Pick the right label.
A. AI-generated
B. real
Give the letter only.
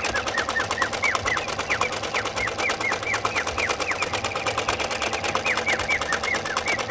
B